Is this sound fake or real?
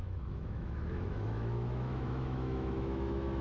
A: fake